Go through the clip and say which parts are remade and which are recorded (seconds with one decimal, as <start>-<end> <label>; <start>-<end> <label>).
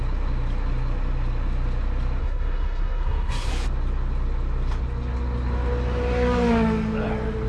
0.0-2.2 recorded; 2.2-3.5 remade; 3.5-7.5 recorded